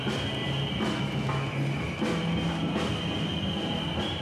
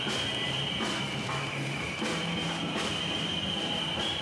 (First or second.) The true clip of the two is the first